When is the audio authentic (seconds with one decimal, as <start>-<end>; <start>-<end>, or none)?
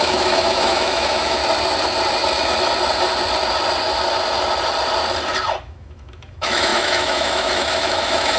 1.4-5.6